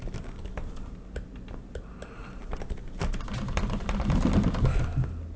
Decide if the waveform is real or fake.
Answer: real